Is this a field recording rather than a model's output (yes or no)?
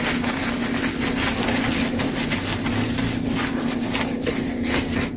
yes